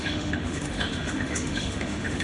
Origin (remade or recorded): remade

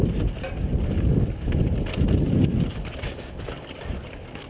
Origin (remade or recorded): recorded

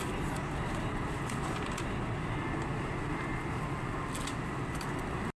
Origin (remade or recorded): recorded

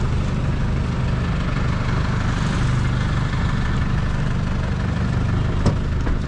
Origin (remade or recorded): recorded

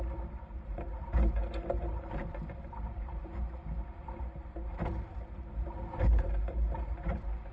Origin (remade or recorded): remade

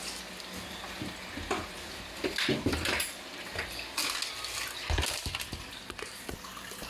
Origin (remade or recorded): recorded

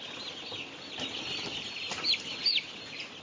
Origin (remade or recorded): recorded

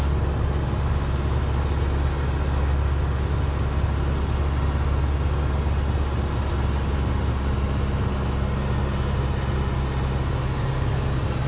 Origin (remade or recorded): recorded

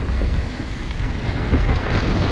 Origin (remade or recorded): remade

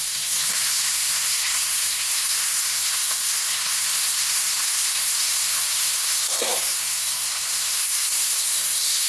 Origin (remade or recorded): remade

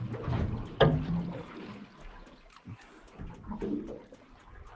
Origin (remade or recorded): recorded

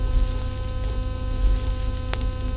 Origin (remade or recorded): recorded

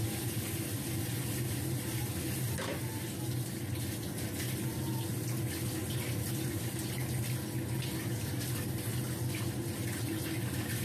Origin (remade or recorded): recorded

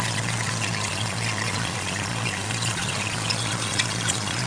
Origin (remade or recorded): remade